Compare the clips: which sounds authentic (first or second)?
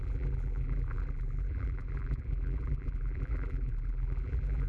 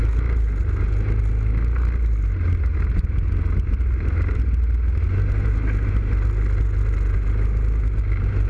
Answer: second